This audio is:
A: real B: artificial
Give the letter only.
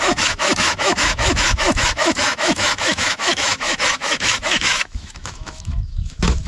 B